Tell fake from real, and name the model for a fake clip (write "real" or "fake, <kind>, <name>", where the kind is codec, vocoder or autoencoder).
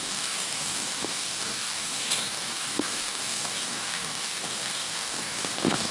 fake, codec, DAC